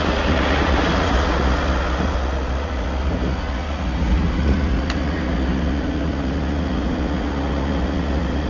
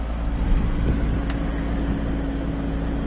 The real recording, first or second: second